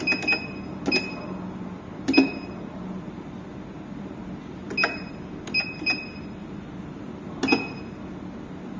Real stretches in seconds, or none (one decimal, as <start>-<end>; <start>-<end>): 0.0-8.8